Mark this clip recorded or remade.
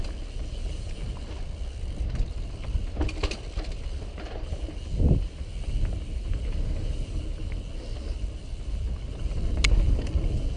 recorded